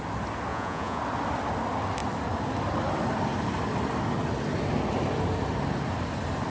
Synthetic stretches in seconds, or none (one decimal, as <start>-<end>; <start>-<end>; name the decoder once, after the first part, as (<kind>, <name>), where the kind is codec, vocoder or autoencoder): 0.5-1.0 (vocoder, Vocos)